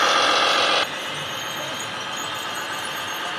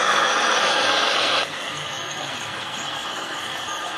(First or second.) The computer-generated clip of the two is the second